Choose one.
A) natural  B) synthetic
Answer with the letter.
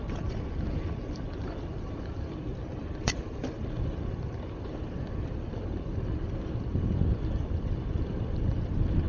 B